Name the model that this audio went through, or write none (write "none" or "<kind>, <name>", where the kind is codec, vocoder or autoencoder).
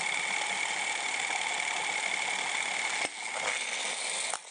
none